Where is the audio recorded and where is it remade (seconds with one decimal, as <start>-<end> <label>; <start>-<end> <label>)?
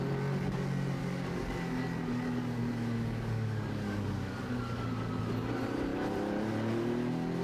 0.0-1.0 recorded; 1.0-5.2 remade; 5.2-7.4 recorded